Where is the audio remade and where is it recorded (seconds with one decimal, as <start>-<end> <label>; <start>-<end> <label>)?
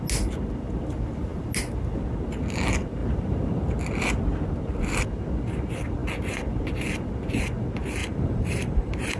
0.0-8.0 recorded; 8.0-9.2 remade